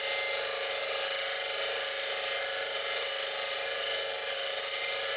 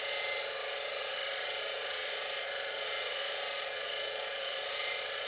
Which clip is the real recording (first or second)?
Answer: first